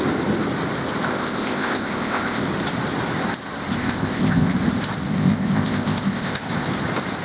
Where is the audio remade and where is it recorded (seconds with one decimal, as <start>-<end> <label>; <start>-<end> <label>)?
0.0-1.1 recorded; 1.1-2.4 remade; 2.4-3.8 recorded; 3.8-4.5 remade; 4.5-5.1 recorded; 5.1-6.5 remade; 6.5-7.2 recorded